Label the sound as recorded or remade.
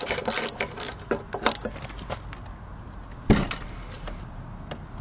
recorded